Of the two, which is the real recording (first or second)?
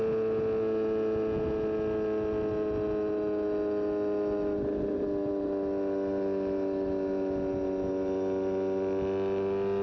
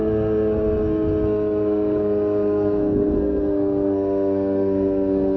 first